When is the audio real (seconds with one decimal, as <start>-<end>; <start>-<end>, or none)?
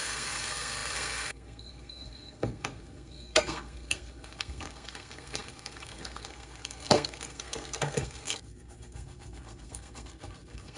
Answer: none